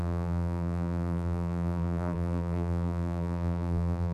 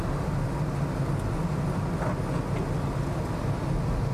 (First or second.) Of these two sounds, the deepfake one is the first